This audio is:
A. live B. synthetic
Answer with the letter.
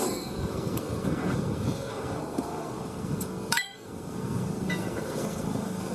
B